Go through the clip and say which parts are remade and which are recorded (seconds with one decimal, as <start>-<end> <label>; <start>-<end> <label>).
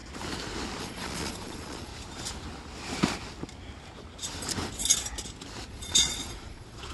0.0-0.8 recorded; 0.8-1.9 remade; 1.9-5.7 recorded; 5.7-6.9 remade